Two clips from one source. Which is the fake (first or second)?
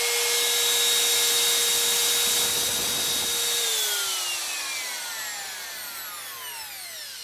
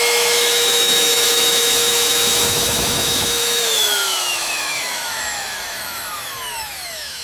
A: second